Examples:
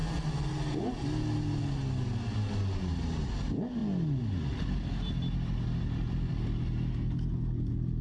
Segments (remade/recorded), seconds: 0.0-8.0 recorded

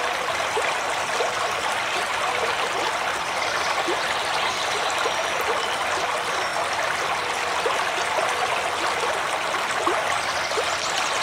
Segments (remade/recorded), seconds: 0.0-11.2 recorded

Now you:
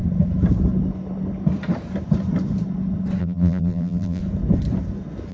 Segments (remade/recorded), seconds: 0.0-3.2 recorded; 3.2-4.2 remade; 4.2-5.3 recorded